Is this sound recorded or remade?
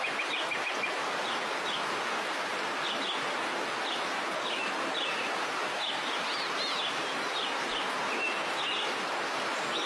recorded